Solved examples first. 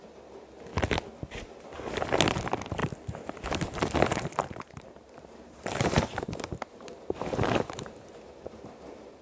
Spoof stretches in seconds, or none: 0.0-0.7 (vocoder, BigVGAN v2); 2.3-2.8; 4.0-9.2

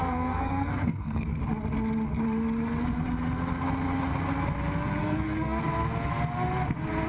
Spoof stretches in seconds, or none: 0.0-1.4 (codec, SNAC); 5.0-5.6

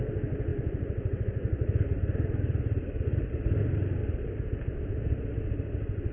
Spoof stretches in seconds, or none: 0.5-4.0 (vocoder, BigVGAN v2)

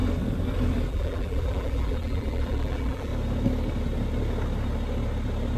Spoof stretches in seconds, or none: 0.9-3.1 (vocoder, BigVGAN v2)

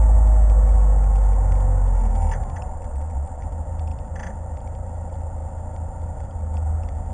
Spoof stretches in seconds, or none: 2.7-3.4 (vocoder, Vocos)

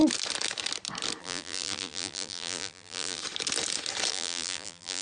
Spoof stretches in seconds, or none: 1.2-3.2 (vocoder, BigVGAN v2); 4.1-5.0

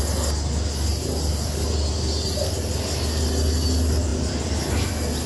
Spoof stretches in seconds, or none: none